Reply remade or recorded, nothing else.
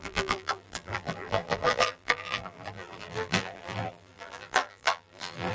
remade